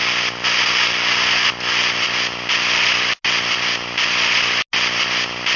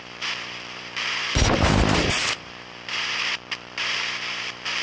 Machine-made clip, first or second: second